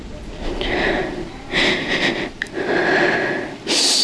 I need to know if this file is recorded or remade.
recorded